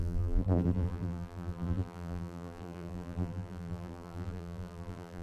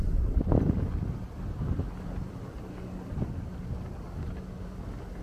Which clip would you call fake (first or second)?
first